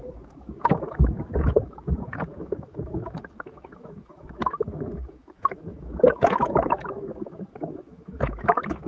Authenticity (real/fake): fake